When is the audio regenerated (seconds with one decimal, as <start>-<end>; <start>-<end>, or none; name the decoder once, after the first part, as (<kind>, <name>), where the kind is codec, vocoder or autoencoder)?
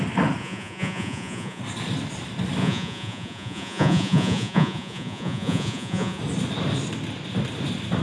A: 0.4-1.6 (vocoder, Vocos); 2.6-6.2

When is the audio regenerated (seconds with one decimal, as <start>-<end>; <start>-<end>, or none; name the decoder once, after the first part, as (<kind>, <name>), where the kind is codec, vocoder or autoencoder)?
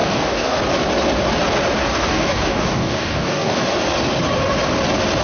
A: 0.0-0.6 (codec, DAC); 1.8-3.6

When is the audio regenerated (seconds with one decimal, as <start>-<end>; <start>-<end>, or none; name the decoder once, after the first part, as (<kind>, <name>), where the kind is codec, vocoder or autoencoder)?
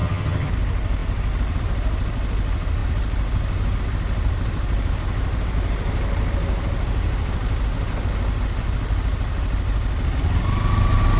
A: 0.0-0.5 (vocoder, HiFi-GAN)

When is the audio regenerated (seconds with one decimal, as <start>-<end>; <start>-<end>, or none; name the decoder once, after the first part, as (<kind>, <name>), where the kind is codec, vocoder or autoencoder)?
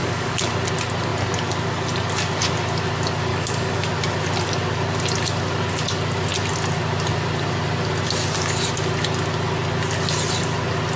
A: 0.0-0.5 (codec, DAC); 3.3-3.9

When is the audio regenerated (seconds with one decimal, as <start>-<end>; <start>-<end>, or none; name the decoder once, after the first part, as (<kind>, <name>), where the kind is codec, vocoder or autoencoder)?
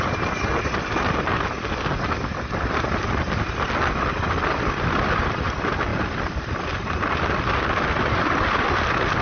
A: none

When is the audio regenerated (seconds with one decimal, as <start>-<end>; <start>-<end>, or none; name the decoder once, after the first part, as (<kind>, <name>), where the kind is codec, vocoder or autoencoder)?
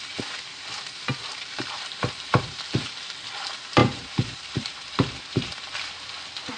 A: 1.3-3.2 (vocoder, BigVGAN v2); 3.8-6.1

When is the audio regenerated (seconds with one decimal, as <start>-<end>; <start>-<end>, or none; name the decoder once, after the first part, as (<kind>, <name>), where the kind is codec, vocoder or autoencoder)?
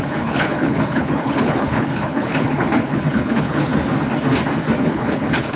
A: 0.0-3.7 (codec, HILCodec); 4.8-5.6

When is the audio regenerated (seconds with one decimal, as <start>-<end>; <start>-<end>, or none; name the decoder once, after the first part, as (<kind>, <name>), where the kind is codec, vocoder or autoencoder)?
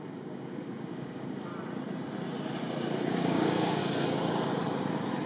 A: 0.0-1.5 (codec, DAC); 3.1-3.8